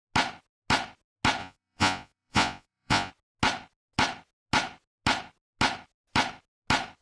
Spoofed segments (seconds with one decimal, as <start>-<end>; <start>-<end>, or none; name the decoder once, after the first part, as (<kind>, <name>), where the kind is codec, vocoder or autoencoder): 1.4-3.1 (vocoder, Vocos)